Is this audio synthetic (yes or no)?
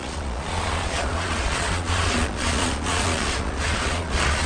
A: yes